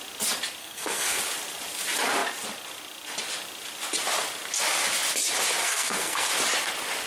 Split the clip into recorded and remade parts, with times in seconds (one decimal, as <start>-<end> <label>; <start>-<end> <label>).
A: 0.0-0.6 recorded; 0.6-1.2 remade; 1.2-5.6 recorded; 5.6-6.3 remade; 6.3-7.1 recorded